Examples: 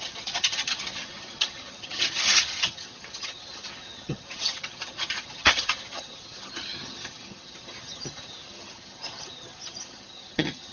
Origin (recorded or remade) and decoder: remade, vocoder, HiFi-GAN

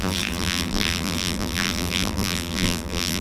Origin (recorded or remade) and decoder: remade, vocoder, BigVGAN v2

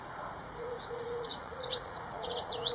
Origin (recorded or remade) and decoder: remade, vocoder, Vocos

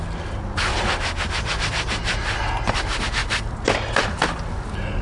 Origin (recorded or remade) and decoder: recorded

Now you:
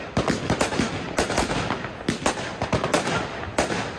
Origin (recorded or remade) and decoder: recorded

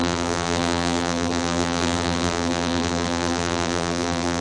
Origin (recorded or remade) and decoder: remade, vocoder, BigVGAN v2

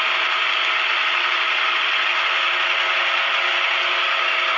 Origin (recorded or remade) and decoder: recorded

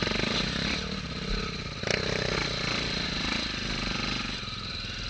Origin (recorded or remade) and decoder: recorded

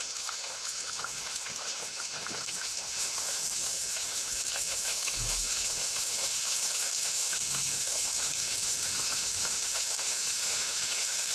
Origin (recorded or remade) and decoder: remade, autoencoder, DAC-VAE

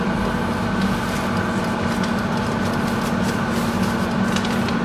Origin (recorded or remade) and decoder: recorded